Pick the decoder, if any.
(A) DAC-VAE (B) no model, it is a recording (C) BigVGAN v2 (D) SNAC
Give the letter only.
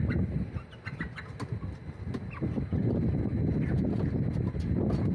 B